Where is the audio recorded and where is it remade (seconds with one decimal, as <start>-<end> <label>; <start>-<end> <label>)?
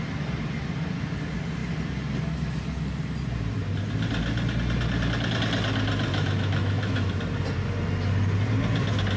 0.0-6.1 recorded; 6.1-7.1 remade; 7.1-9.2 recorded